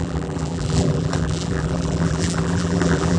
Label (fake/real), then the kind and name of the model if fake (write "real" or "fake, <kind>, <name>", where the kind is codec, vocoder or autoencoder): fake, vocoder, BigVGAN v2